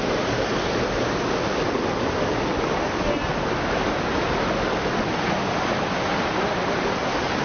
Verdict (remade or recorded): recorded